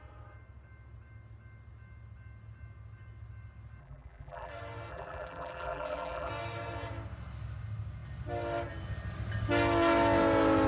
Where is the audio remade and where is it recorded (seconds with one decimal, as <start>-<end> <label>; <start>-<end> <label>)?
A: 0.0-3.8 recorded; 3.8-4.5 remade; 4.5-4.9 recorded; 4.9-6.3 remade; 6.3-10.7 recorded